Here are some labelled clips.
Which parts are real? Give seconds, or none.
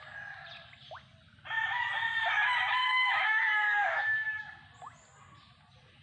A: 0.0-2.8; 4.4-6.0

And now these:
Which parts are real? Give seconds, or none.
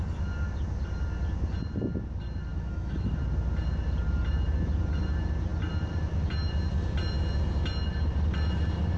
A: 0.0-2.5; 3.2-9.0